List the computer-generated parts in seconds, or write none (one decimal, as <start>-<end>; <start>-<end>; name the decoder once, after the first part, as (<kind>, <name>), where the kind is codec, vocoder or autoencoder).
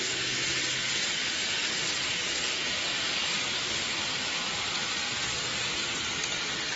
3.2-5.4 (vocoder, BigVGAN v2)